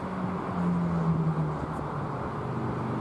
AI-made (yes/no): no